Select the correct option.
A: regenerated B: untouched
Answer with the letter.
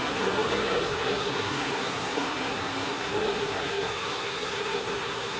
A